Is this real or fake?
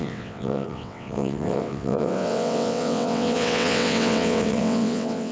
fake